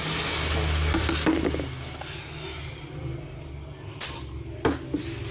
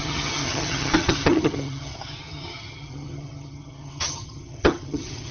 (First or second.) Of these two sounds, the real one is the first